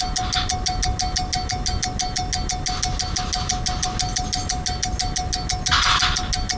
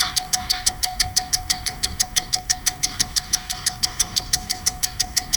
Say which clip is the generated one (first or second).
second